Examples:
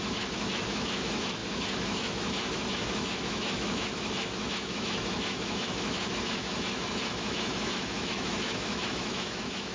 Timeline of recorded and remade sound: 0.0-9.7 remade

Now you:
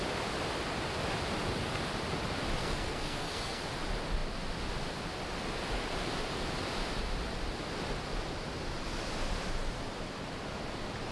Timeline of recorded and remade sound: 0.0-2.6 recorded; 2.6-3.6 remade; 3.6-11.1 recorded

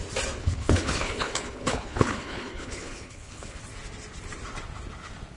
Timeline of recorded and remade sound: 0.0-0.4 recorded; 0.4-3.6 remade; 3.6-5.4 recorded

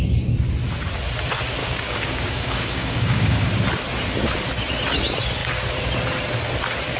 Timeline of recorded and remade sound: 0.0-1.6 recorded; 1.6-3.4 remade; 3.4-7.0 recorded

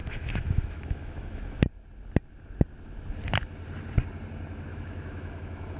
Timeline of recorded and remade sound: 0.0-1.6 remade; 1.6-4.7 recorded; 4.7-5.8 remade

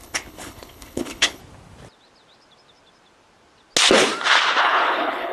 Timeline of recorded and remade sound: 0.0-1.4 remade; 1.4-4.6 recorded; 4.6-5.3 remade